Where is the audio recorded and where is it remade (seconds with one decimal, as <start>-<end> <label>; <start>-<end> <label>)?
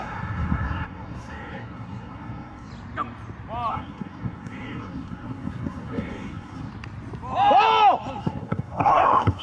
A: 0.0-2.7 remade; 2.7-3.7 recorded; 3.7-6.7 remade; 6.7-8.2 recorded; 8.2-9.4 remade